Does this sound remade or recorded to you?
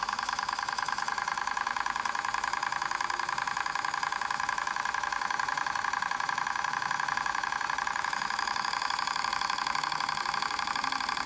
remade